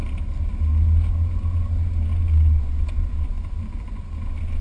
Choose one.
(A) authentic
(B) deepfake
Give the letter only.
A